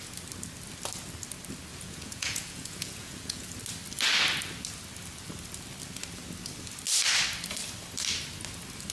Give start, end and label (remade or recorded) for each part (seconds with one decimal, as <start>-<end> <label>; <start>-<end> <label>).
0.0-1.7 recorded; 1.7-3.5 remade; 3.5-8.9 recorded